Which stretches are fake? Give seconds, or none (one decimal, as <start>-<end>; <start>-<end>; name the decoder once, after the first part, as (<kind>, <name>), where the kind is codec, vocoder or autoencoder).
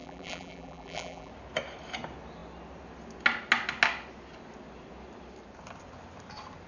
0.0-1.3 (vocoder, BigVGAN v2)